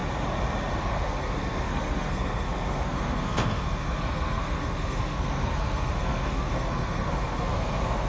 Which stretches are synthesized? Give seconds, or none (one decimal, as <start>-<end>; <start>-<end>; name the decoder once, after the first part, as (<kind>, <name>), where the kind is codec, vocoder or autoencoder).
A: 0.8-8.1 (codec, SNAC)